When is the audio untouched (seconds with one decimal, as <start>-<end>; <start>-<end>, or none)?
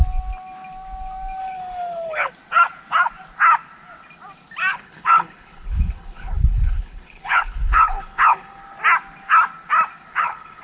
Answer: 0.0-1.4; 2.3-4.7; 8.6-10.1